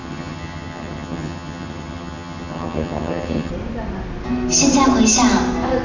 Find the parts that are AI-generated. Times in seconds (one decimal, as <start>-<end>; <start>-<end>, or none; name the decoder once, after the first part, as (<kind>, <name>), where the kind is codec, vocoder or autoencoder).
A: 0.0-3.5 (vocoder, HiFi-GAN)